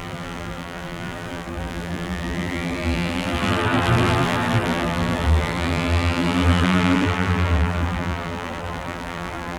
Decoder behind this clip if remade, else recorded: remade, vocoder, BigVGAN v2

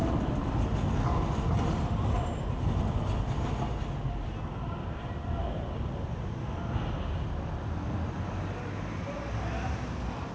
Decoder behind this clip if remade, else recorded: recorded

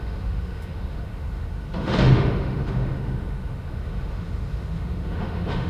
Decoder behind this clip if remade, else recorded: remade, autoencoder, DAC-VAE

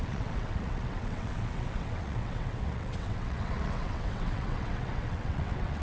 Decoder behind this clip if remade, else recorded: remade, vocoder, WaveNeXt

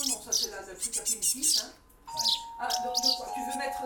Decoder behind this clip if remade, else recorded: recorded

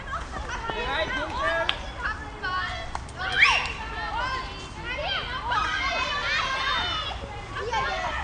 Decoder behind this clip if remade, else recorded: recorded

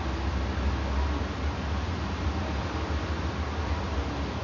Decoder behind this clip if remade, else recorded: recorded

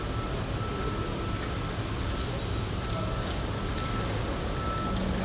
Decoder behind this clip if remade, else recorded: recorded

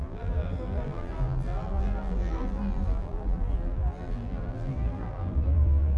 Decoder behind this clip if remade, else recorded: remade, vocoder, BigVGAN v2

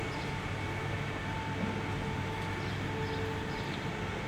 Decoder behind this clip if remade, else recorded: recorded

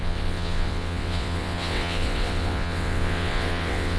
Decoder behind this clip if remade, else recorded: remade, vocoder, WaveNeXt